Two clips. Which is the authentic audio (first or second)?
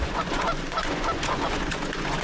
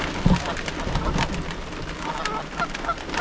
second